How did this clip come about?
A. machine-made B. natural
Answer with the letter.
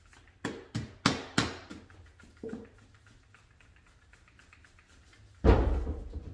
B